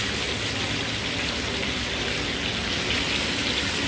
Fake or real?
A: real